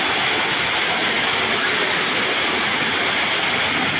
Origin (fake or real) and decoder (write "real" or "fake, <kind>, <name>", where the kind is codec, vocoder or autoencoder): real